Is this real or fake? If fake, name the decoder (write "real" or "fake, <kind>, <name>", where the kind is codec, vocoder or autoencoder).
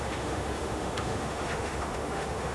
fake, autoencoder, DAC-VAE